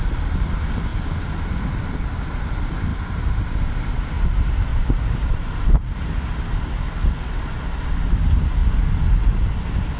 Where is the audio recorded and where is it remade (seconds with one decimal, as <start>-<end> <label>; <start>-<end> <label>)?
0.0-2.9 recorded; 2.9-3.7 remade; 3.7-4.7 recorded; 4.7-6.1 remade; 6.1-10.0 recorded

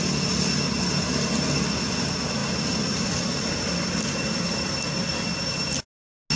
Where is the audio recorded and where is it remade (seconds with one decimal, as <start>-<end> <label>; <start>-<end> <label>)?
0.0-6.4 recorded

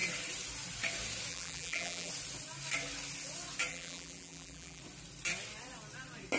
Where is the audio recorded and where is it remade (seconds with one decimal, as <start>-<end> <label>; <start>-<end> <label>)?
0.0-1.3 recorded; 1.3-2.1 remade; 2.1-3.7 recorded; 3.7-4.8 remade; 4.8-6.4 recorded

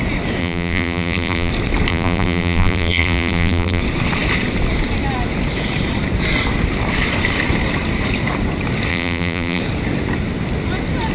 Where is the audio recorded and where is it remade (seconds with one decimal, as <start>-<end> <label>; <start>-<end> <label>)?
0.0-0.4 recorded; 0.4-1.5 remade; 1.5-1.9 recorded; 1.9-3.8 remade; 3.8-8.9 recorded; 8.9-9.6 remade; 9.6-11.1 recorded